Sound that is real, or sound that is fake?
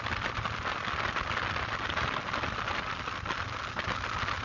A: real